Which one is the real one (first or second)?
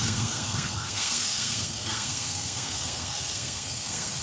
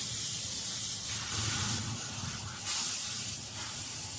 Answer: second